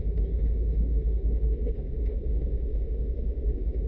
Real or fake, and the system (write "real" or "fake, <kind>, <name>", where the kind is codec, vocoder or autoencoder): fake, autoencoder, DAC-VAE